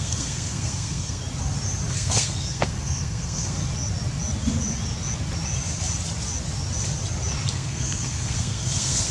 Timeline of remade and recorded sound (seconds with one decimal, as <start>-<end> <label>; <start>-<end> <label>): 0.0-1.2 remade; 1.2-1.9 recorded; 1.9-3.6 remade; 3.6-7.5 recorded; 7.5-9.1 remade